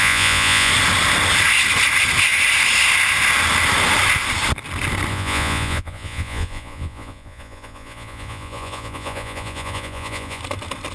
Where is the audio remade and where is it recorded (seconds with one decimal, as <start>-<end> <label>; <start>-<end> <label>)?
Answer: 0.0-0.7 remade; 0.7-5.1 recorded; 5.1-10.4 remade; 10.4-10.9 recorded